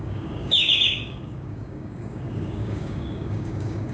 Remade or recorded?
remade